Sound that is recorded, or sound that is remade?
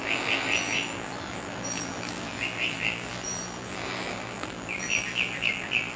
remade